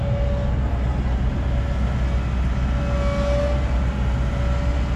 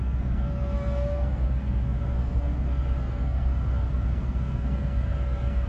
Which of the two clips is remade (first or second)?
second